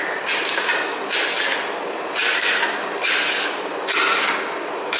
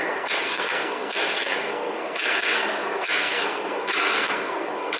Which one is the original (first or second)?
first